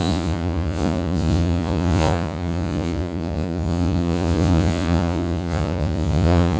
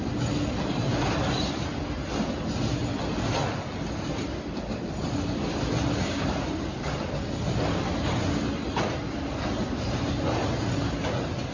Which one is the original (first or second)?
second